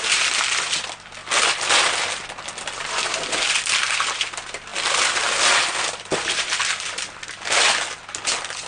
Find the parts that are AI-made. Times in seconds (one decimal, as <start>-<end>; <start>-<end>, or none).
4.7-7.2